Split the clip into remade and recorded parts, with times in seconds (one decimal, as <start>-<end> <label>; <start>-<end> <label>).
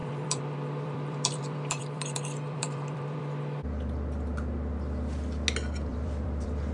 0.0-3.2 remade; 3.2-5.9 recorded; 5.9-6.7 remade